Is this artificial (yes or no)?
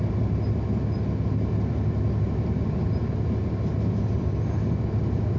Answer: no